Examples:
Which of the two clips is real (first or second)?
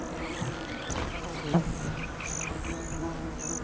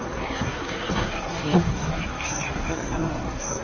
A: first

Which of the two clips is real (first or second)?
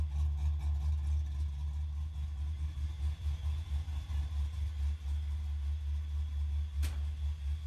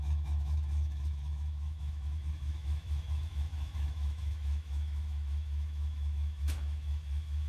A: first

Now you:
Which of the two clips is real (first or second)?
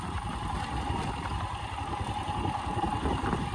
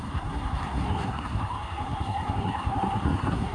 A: first